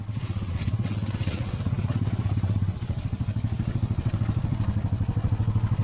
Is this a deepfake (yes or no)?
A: yes